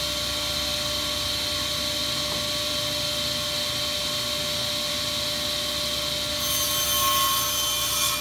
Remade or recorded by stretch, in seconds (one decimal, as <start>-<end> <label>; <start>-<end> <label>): 0.0-8.2 recorded